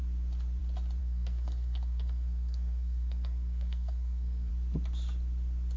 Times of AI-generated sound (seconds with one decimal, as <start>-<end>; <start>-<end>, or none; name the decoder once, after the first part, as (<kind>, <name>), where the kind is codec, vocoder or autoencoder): 1.0-4.5 (codec, SNAC)